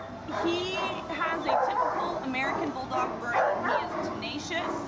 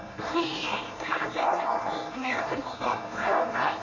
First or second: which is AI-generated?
second